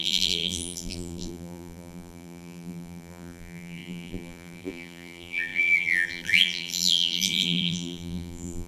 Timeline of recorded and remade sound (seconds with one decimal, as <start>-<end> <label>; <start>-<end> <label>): 0.0-8.7 remade